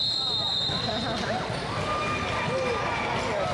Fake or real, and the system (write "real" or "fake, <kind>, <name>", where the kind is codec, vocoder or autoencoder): real